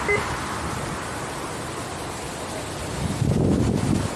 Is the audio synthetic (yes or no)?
no